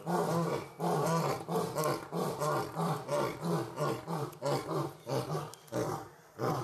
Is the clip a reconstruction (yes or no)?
no